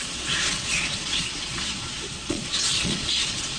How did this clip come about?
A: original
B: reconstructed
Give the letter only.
B